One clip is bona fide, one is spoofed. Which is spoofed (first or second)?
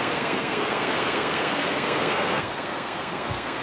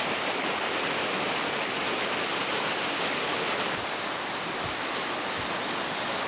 first